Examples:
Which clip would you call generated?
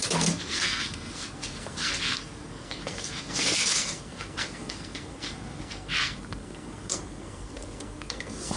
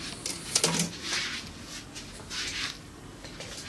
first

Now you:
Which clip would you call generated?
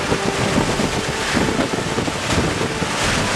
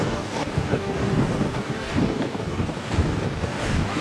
second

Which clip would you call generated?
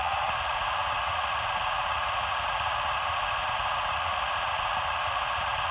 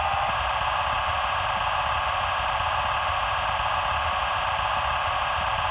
first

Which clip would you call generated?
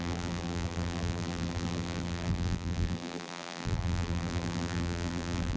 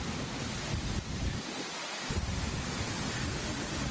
first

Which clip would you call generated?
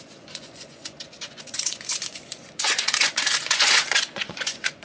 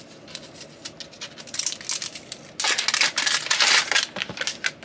first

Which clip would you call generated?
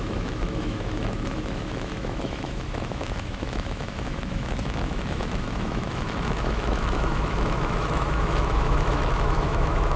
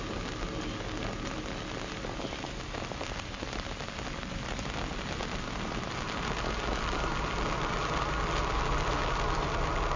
first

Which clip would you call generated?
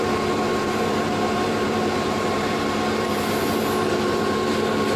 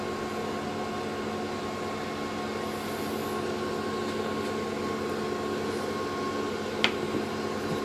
first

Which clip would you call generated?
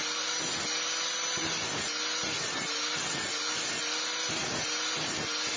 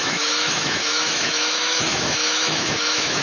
second